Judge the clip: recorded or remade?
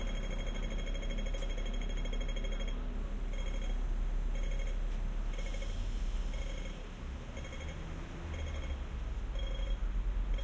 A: recorded